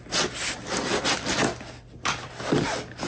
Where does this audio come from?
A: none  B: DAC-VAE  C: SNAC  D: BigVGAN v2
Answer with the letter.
A